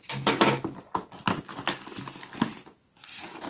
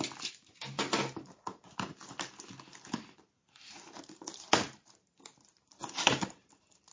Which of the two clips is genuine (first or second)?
first